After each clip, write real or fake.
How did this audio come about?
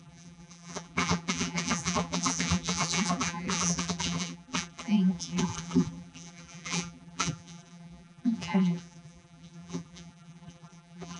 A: fake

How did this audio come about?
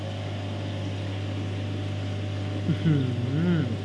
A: real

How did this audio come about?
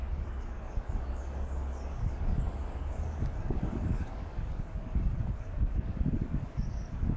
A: fake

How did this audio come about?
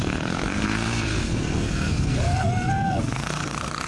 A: fake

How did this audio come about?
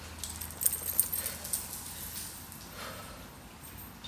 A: real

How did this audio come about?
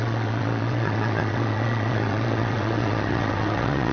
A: fake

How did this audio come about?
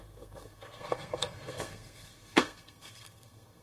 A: fake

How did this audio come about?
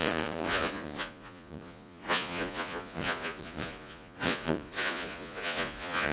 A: fake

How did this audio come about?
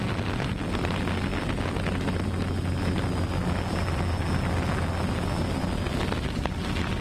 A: real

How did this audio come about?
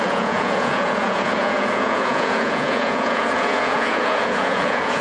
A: fake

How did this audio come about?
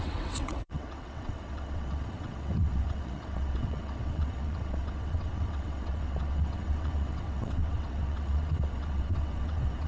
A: fake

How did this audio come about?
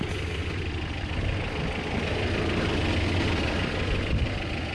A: real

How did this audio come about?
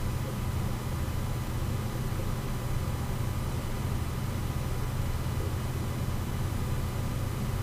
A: real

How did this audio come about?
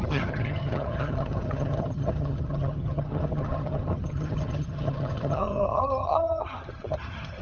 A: fake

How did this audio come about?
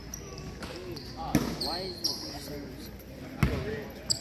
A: real